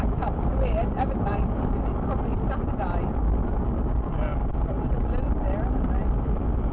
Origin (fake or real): real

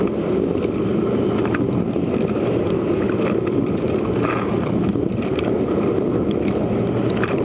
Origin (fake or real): real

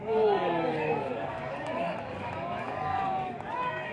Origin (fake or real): fake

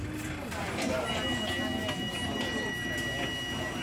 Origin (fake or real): real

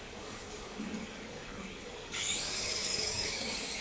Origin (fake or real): fake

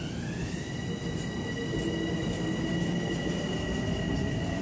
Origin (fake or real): real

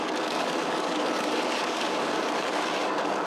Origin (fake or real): fake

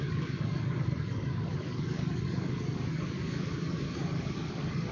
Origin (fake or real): fake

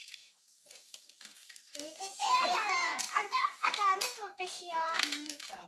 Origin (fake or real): fake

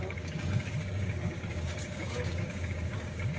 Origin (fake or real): fake